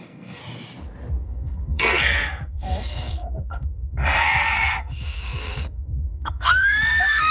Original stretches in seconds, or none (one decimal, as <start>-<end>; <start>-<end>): 0.4-1.2